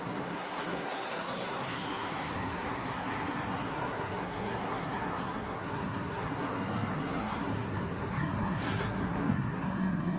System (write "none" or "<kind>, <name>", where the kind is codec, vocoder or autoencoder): codec, SNAC